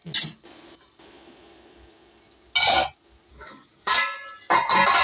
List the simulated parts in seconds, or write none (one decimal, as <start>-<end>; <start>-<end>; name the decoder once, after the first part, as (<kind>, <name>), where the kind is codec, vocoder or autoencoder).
3.3-4.0 (codec, DAC)